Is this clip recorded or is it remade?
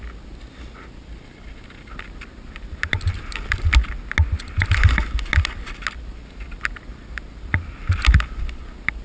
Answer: recorded